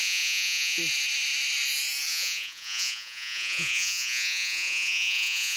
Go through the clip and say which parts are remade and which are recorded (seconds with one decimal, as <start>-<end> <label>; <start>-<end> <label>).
0.0-0.8 remade; 0.8-2.1 recorded; 2.1-5.6 remade